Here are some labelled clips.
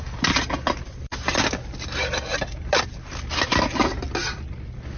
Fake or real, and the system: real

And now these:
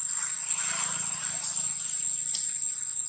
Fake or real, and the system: real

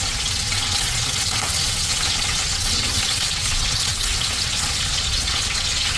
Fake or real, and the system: fake, vocoder, WaveNeXt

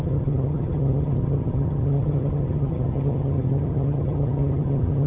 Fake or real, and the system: fake, vocoder, HiFi-GAN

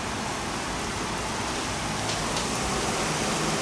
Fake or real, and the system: real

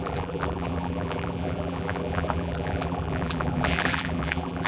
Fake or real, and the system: fake, vocoder, BigVGAN v2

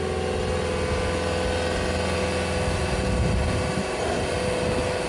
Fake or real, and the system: real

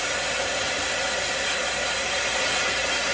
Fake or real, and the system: real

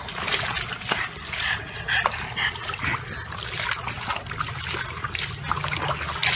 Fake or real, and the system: real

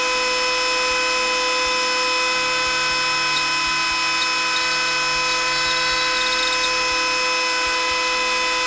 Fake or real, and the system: real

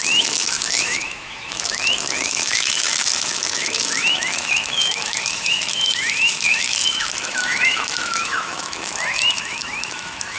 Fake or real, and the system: fake, autoencoder, DAC-VAE